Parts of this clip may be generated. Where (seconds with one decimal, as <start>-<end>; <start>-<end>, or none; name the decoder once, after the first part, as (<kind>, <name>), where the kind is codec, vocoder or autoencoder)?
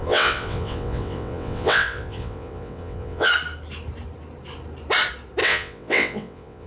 0.0-3.3 (vocoder, WaveNeXt); 5.4-6.7